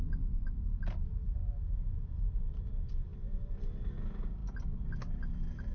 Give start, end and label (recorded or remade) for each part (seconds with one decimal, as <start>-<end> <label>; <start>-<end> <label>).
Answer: 0.0-4.4 remade; 4.4-5.1 recorded; 5.1-5.7 remade